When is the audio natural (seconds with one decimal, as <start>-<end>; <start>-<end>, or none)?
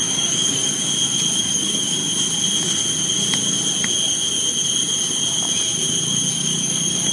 0.8-1.4; 2.0-6.3